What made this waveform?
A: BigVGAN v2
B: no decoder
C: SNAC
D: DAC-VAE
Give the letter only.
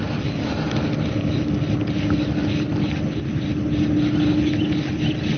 B